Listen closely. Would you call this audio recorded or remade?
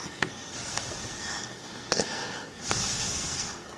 remade